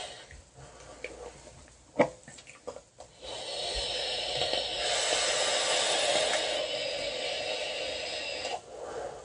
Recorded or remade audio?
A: recorded